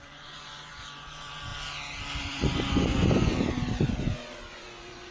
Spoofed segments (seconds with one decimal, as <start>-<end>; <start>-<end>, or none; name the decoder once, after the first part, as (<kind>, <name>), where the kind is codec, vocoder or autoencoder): 0.0-1.5 (vocoder, Vocos); 2.2-3.3; 4.1-5.1

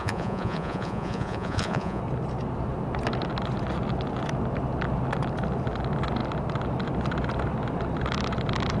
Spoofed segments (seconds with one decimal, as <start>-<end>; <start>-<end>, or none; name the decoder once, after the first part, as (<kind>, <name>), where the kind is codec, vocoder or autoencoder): 0.0-2.0 (vocoder, Vocos)

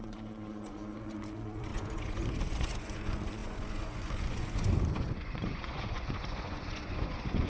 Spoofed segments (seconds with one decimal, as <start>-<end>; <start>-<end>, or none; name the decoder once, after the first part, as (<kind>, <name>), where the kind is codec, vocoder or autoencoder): 0.0-7.5 (vocoder, Vocos)

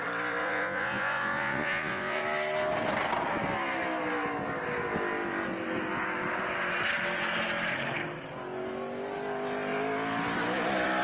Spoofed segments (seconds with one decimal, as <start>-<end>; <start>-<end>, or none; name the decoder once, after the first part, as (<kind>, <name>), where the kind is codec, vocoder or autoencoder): 0.4-2.2 (vocoder, Vocos)

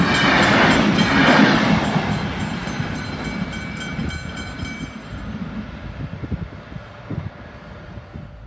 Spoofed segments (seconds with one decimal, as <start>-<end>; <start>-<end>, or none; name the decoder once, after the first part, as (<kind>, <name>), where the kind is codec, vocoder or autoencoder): none

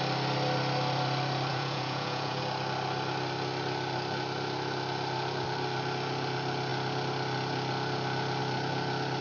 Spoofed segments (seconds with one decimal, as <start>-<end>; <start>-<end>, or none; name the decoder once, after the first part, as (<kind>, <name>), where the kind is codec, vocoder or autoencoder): 1.5-2.4 (vocoder, Vocos)

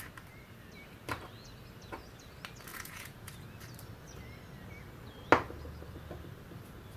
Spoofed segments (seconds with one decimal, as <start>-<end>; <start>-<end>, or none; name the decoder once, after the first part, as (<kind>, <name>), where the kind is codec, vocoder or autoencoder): 2.7-3.3 (vocoder, Vocos)

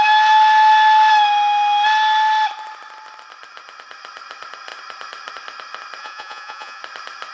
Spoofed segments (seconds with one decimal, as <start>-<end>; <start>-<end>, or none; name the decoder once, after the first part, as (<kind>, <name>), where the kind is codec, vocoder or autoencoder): 6.0-6.8 (vocoder, Vocos)